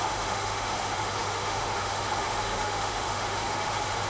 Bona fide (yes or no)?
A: no